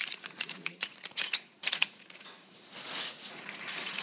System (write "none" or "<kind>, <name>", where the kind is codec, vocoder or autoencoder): vocoder, Vocos